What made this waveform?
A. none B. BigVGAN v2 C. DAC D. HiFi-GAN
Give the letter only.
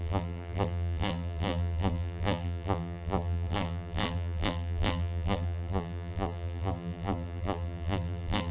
B